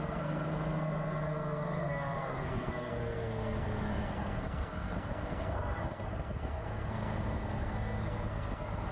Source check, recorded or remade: remade